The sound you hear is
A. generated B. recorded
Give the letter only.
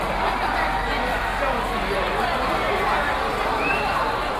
B